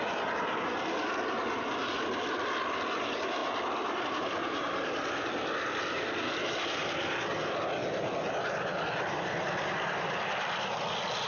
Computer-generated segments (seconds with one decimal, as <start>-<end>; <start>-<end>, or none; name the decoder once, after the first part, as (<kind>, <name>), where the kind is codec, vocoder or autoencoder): 3.4-4.1 (vocoder, BigVGAN v2)